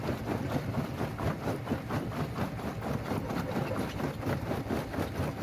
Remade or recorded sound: recorded